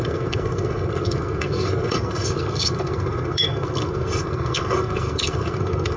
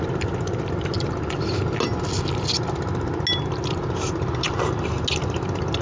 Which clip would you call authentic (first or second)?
second